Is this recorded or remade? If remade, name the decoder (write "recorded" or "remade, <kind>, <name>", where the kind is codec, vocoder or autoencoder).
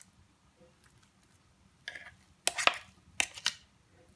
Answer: recorded